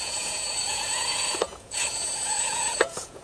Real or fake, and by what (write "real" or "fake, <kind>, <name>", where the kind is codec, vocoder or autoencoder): fake, vocoder, Vocos